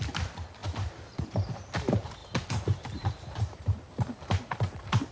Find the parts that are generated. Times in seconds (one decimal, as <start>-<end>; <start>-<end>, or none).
none